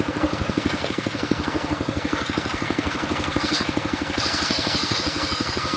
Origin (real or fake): fake